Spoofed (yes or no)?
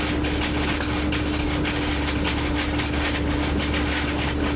no